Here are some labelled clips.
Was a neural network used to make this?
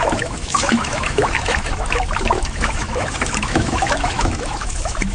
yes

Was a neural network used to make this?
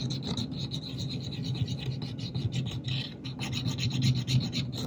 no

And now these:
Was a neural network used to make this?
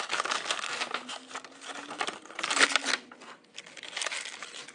no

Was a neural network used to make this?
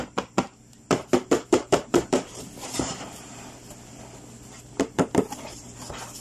yes